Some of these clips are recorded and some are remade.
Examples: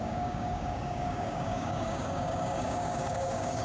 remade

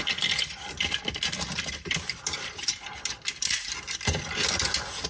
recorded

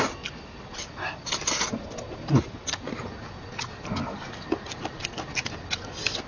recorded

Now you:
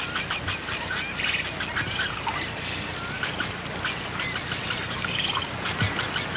recorded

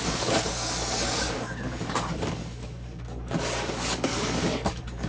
remade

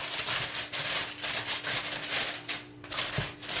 recorded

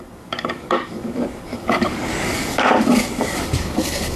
remade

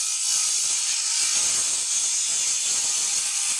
recorded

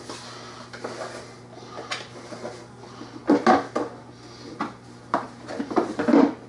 recorded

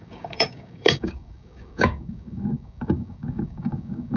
remade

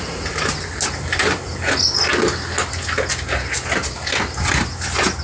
recorded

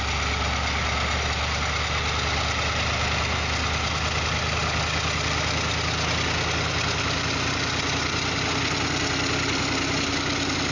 recorded